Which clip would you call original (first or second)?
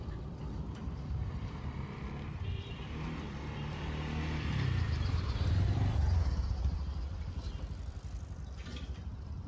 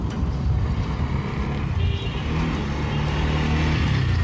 second